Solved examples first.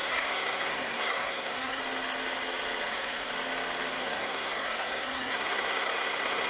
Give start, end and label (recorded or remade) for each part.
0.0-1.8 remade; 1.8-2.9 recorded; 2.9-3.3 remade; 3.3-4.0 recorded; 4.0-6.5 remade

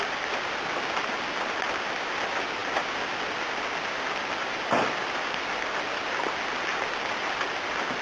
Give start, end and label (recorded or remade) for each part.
0.0-8.0 recorded

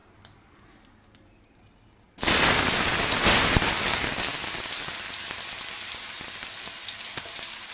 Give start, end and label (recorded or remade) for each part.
0.0-3.7 remade; 3.7-7.7 recorded

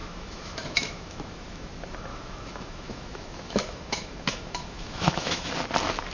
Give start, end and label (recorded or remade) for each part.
0.0-1.7 remade; 1.7-2.1 recorded; 2.1-5.5 remade; 5.5-6.1 recorded

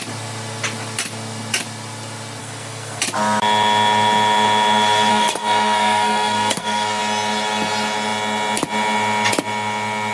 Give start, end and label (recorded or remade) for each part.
0.0-2.4 recorded; 2.4-3.0 remade; 3.0-5.1 recorded; 5.1-7.0 remade; 7.0-10.1 recorded

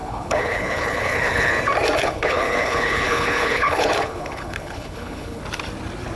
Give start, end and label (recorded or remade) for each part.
0.0-1.5 remade; 1.5-2.0 recorded; 2.0-5.4 remade; 5.4-6.2 recorded

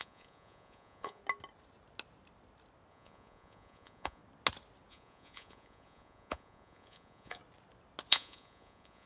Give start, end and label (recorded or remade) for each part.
0.0-1.2 remade; 1.2-2.9 recorded; 2.9-4.2 remade; 4.2-4.9 recorded; 4.9-7.4 remade; 7.4-8.1 recorded; 8.1-9.1 remade

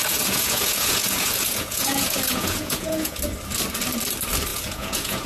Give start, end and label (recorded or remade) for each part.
0.0-3.2 remade; 3.2-4.5 recorded; 4.5-5.3 remade